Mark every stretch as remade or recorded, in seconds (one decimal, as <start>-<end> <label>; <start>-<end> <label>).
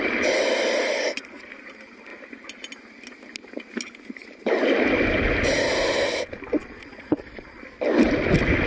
0.0-6.6 recorded; 6.6-7.6 remade; 7.6-8.7 recorded